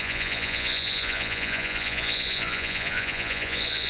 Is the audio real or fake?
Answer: fake